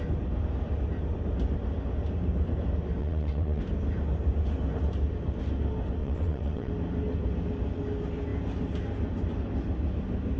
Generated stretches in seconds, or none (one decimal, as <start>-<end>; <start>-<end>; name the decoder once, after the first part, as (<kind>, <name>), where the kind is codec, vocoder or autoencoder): 3.0-3.6 (vocoder, WaveNeXt); 6.0-6.7